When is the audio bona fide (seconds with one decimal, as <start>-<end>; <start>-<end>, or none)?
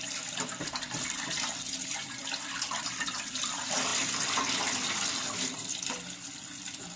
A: 0.0-7.0